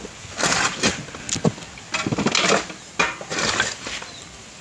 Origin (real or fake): real